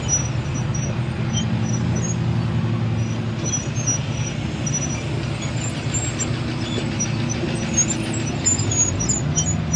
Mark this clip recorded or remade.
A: recorded